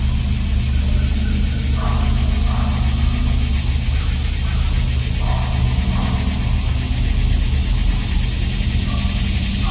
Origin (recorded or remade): recorded